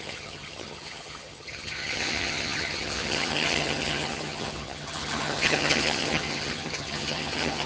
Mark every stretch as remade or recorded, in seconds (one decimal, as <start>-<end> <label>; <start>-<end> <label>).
0.0-7.7 remade